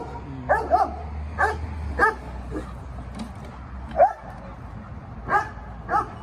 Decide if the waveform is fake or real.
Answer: real